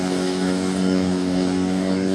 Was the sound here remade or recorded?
remade